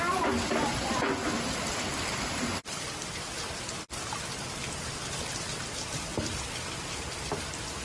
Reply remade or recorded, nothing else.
remade